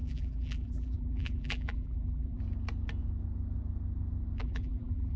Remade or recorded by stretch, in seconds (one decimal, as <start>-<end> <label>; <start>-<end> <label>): 0.0-2.4 remade; 2.4-4.4 recorded; 4.4-5.2 remade